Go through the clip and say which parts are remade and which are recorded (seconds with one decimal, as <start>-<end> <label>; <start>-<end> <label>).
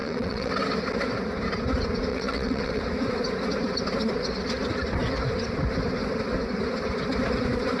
0.0-0.5 remade; 0.5-2.1 recorded; 2.1-2.8 remade; 2.8-7.8 recorded